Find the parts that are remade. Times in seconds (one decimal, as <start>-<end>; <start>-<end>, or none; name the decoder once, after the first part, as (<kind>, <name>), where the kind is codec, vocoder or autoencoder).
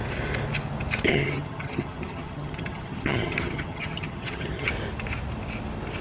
1.1-4.7 (vocoder, HiFi-GAN)